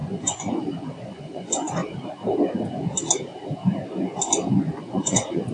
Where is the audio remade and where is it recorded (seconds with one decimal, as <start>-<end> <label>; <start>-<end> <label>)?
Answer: 0.0-1.8 remade; 1.8-4.5 recorded; 4.5-5.5 remade